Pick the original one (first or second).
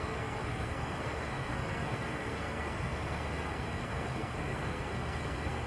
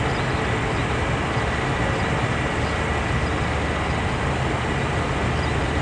second